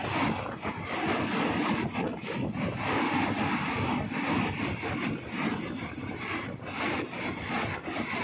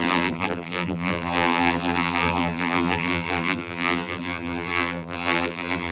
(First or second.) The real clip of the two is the first